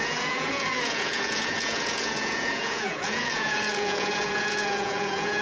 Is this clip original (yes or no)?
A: no